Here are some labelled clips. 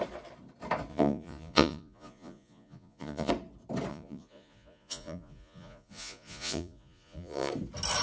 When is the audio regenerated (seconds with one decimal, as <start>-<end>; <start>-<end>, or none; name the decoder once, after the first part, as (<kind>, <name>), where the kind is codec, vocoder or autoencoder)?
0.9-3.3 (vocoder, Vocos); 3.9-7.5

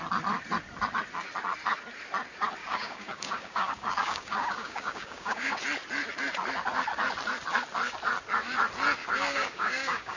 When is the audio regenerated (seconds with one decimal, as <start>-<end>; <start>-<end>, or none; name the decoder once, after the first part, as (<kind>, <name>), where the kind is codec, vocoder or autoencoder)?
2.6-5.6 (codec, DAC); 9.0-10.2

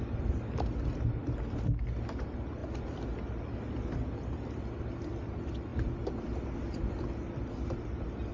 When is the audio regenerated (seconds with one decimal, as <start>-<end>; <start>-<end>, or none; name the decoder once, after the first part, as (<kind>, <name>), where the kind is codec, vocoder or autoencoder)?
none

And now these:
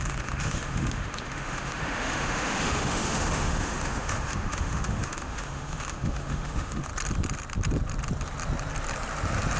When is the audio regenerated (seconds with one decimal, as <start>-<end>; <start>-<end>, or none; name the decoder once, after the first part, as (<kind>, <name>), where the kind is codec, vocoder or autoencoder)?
0.0-6.9 (autoencoder, DAC-VAE)

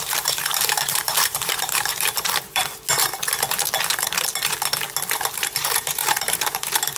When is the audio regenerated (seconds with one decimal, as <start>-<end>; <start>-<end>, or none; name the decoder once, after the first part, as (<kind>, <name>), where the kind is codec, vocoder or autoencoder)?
0.0-2.6 (vocoder, BigVGAN v2); 5.3-7.0

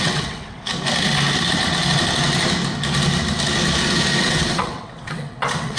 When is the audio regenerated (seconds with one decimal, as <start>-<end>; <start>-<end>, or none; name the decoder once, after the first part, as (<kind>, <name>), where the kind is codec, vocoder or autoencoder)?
0.0-0.7 (vocoder, WaveNeXt); 4.2-5.8